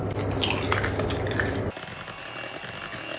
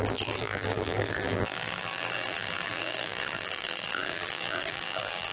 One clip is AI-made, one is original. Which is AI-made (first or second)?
second